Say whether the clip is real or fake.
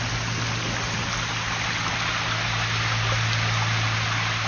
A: real